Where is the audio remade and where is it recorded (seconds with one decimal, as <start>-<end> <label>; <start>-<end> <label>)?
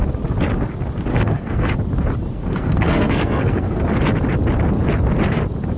0.0-1.1 recorded; 1.1-1.8 remade; 1.8-2.3 recorded; 2.3-3.8 remade; 3.8-5.8 recorded